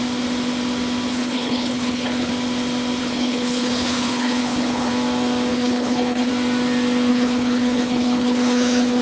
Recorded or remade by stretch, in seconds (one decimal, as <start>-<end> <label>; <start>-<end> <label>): 0.0-1.1 recorded; 1.1-2.3 remade; 2.3-3.0 recorded; 3.0-4.9 remade; 4.9-5.5 recorded; 5.5-6.3 remade; 6.3-7.1 recorded; 7.1-9.0 remade